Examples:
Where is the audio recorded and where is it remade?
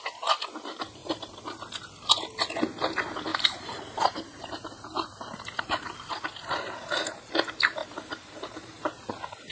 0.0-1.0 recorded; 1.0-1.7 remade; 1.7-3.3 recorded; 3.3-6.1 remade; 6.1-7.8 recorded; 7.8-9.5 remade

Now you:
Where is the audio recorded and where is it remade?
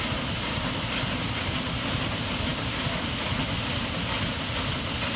0.0-5.2 recorded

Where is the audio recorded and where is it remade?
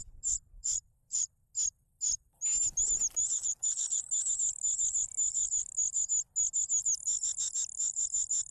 0.0-1.5 remade; 1.5-3.4 recorded; 3.4-4.1 remade; 4.1-8.5 recorded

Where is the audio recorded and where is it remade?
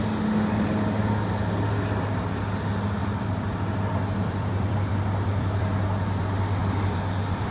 0.0-3.0 recorded; 3.0-5.6 remade; 5.6-6.6 recorded; 6.6-7.5 remade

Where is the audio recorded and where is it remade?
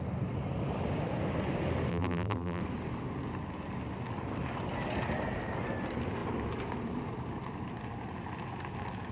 0.0-1.9 recorded; 1.9-2.6 remade; 2.6-9.1 recorded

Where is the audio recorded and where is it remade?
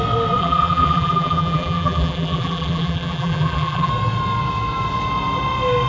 0.0-0.4 recorded; 0.4-3.9 remade; 3.9-5.9 recorded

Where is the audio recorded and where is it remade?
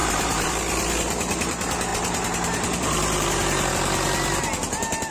0.0-0.5 remade; 0.5-1.9 recorded; 1.9-3.7 remade; 3.7-5.1 recorded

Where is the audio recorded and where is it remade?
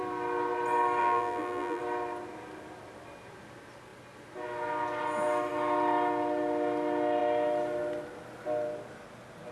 0.0-1.0 recorded; 1.0-1.8 remade; 1.8-9.5 recorded